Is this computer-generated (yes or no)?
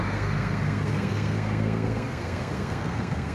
yes